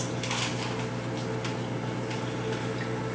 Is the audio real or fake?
real